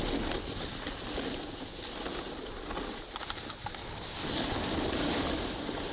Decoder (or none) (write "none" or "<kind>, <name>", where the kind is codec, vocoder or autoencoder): none